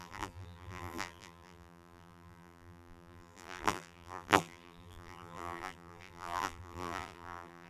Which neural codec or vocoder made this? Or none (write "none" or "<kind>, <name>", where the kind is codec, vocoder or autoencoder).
vocoder, BigVGAN v2